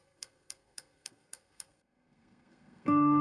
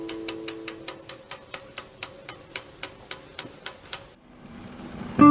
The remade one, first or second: first